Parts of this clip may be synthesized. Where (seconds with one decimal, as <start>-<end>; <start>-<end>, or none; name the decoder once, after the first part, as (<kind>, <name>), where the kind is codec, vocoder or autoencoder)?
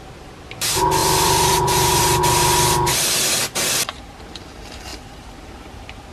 1.0-2.2 (vocoder, BigVGAN v2); 4.9-5.5